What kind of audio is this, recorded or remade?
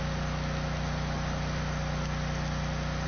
recorded